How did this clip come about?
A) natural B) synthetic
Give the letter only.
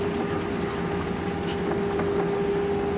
A